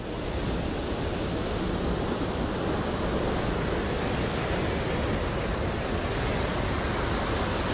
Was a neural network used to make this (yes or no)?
no